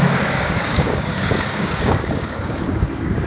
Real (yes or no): no